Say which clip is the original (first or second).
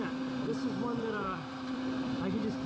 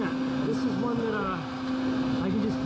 second